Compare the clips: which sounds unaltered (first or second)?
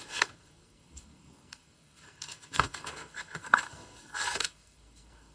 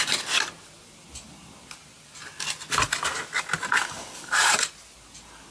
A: second